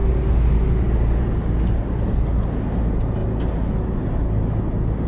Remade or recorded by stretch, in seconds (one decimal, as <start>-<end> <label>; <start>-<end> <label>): 0.0-5.1 recorded